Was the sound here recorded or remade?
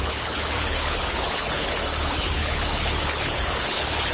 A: remade